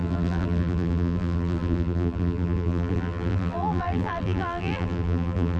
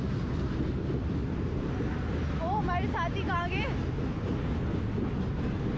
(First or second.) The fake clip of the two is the first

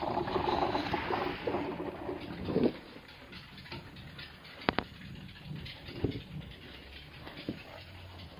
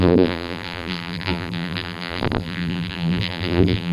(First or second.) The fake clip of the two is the second